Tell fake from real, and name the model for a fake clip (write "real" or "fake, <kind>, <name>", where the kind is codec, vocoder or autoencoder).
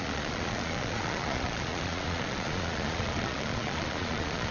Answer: fake, vocoder, Vocos